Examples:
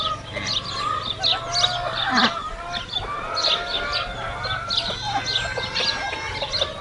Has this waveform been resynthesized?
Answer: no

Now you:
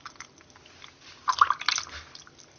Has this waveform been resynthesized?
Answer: no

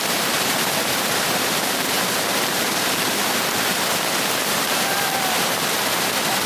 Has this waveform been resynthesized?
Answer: yes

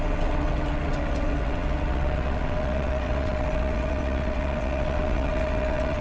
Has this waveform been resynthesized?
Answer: yes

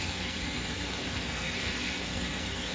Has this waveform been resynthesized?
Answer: yes